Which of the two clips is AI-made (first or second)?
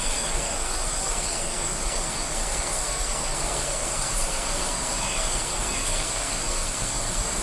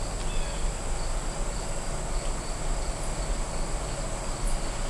first